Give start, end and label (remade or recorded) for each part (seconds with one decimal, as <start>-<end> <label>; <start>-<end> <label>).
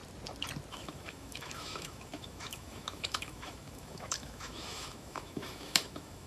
0.0-0.7 recorded; 0.7-6.3 remade